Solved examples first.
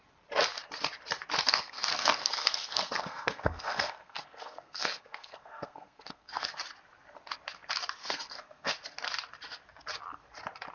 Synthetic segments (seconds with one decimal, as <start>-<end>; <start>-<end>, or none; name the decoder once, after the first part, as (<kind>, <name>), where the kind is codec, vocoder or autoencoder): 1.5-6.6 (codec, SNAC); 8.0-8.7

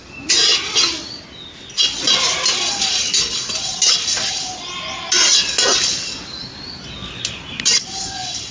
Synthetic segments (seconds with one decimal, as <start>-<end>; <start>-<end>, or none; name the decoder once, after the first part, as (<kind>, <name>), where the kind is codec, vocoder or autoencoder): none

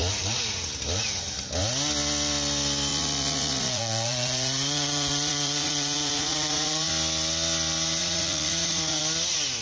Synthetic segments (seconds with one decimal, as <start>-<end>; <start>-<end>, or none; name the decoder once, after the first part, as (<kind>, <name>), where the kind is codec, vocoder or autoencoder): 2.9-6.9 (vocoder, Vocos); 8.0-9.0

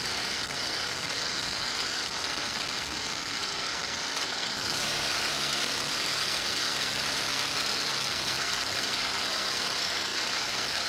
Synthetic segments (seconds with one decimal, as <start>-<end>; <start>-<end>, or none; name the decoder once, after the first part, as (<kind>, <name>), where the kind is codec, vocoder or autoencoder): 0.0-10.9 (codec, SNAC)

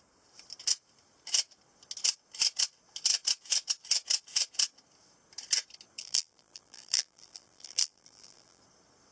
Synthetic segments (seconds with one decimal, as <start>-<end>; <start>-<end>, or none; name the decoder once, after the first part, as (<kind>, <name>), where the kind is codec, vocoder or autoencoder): 6.0-8.6 (vocoder, BigVGAN v2)